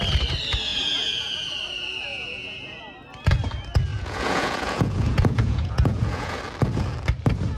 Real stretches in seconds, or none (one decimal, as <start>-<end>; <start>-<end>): 0.0-0.7; 1.5-2.1; 2.8-3.9; 6.4-7.6